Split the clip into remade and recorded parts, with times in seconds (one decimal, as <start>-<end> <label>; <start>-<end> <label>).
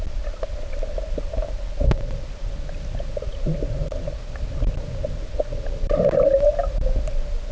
0.0-7.5 recorded